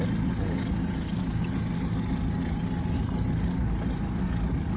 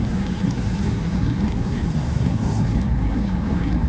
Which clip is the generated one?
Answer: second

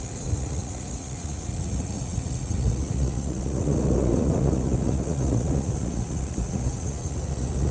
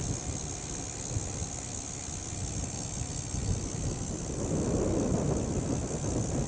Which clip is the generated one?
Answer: first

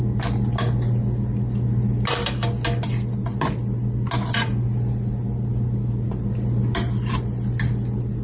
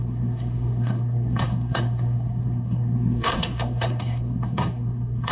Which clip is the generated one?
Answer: second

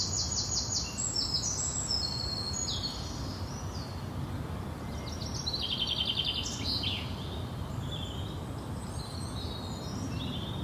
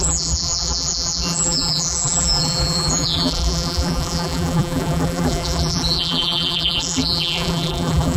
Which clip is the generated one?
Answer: second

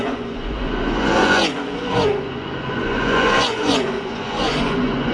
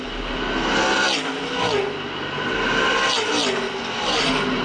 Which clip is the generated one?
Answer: first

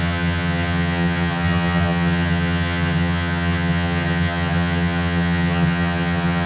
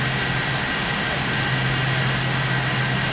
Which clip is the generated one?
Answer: first